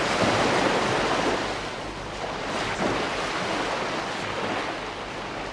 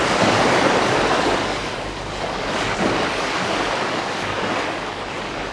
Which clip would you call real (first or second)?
first